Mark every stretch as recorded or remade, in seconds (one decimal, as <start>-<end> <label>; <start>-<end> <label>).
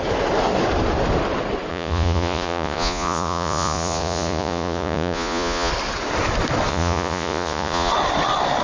0.0-1.7 recorded; 1.7-5.7 remade; 5.7-6.7 recorded; 6.7-7.9 remade; 7.9-8.6 recorded